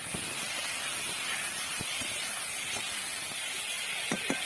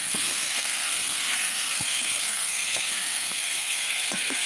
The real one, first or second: first